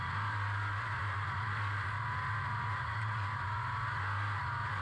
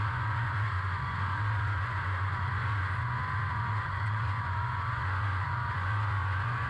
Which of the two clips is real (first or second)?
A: first